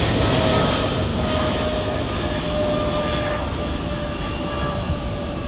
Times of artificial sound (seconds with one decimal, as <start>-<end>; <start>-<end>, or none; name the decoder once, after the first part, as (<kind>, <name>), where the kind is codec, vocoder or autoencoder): 1.1-4.2 (autoencoder, DAC-VAE)